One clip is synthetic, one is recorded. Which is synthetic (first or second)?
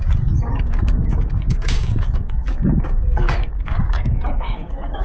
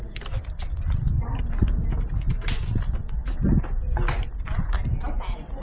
first